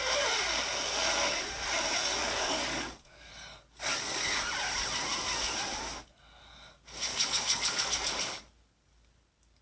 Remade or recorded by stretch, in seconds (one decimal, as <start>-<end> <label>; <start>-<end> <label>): 0.0-2.2 recorded; 2.2-3.3 remade; 3.3-7.1 recorded; 7.1-8.4 remade; 8.4-9.6 recorded